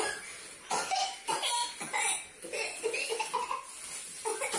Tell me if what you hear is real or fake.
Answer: real